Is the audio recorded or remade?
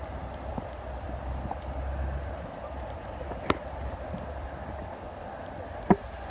recorded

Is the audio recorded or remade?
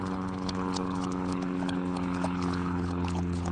remade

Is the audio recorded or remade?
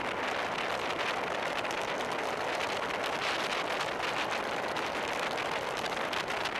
recorded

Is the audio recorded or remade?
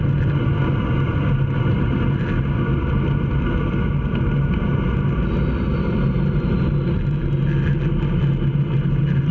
recorded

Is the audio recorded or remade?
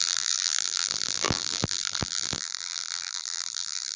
remade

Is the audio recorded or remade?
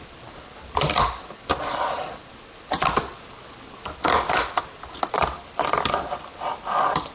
recorded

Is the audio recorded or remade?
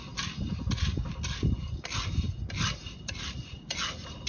recorded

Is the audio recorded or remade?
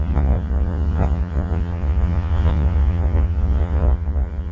remade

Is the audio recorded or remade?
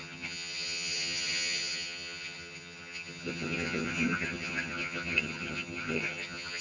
remade